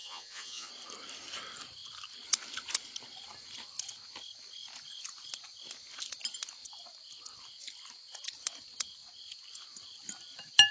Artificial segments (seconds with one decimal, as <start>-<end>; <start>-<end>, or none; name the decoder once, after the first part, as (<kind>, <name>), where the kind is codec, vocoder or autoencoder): 0.0-0.7 (vocoder, Vocos)